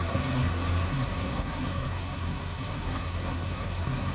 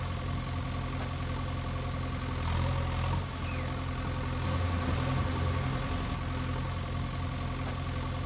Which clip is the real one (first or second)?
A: second